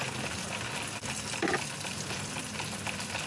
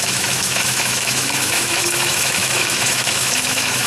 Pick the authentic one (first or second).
first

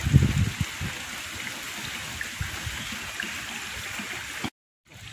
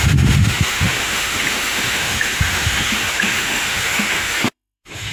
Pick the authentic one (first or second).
first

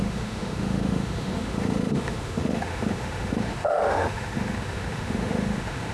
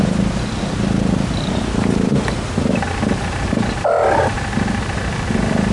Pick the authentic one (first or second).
second